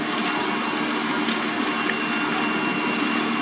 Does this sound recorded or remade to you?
recorded